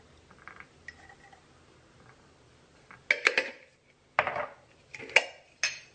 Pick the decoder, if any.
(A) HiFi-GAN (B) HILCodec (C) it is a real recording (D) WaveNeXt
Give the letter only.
C